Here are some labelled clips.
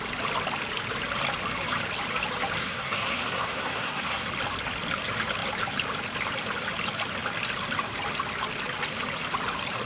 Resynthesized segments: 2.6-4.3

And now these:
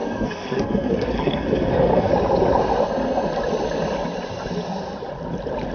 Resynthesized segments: 0.0-2.1

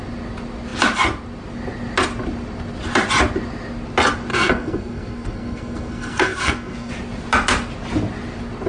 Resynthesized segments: 4.3-6.9

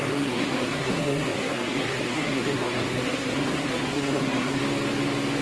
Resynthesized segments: 0.0-4.6

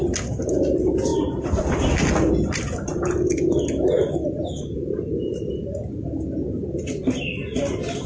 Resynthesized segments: none

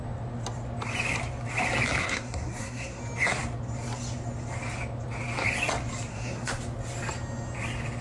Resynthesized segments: 2.0-3.0; 6.1-6.6

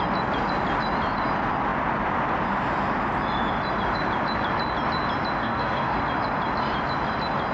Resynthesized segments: 5.4-6.0

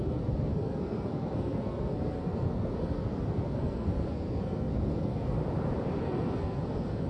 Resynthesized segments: 0.0-5.4; 6.0-7.1